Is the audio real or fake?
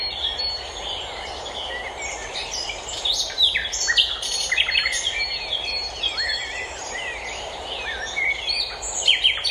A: fake